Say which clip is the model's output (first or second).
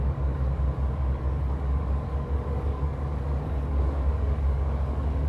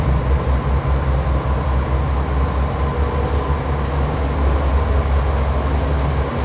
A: first